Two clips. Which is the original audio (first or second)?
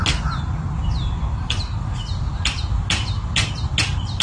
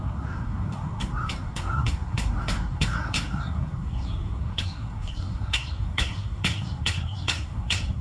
first